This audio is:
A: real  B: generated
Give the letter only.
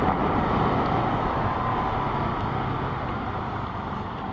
A